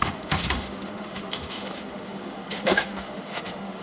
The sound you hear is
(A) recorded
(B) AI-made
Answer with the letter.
B